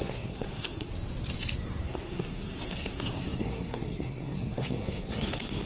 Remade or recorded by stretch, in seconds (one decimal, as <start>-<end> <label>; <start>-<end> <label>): 0.0-0.9 remade; 0.9-1.8 recorded; 1.8-5.7 remade